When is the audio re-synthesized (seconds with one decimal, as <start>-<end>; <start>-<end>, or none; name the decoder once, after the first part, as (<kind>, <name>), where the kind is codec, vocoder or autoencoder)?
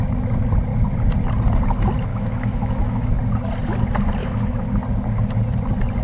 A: 2.1-3.2 (autoencoder, DAC-VAE); 4.2-4.8